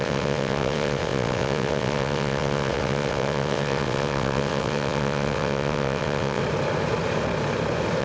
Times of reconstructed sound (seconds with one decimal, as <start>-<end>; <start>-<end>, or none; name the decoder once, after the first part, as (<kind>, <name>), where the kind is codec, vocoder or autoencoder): 0.0-6.4 (vocoder, WaveNeXt)